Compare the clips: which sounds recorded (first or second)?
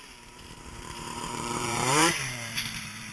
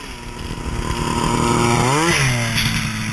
second